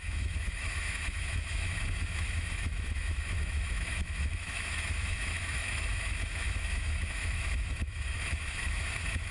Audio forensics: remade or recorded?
remade